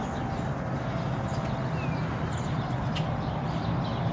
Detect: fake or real real